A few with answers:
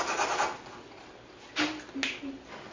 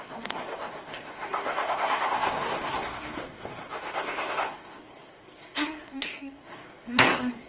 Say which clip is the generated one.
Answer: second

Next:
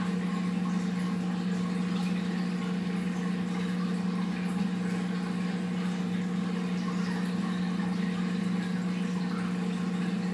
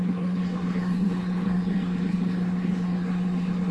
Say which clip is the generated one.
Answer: second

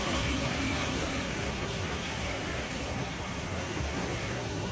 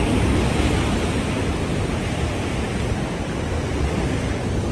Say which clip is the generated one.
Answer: first